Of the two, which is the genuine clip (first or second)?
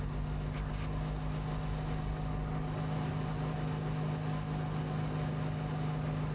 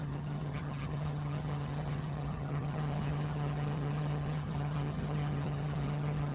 first